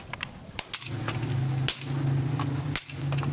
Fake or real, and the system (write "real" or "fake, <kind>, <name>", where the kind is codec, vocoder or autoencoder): real